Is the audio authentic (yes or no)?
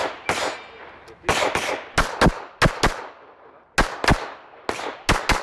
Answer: yes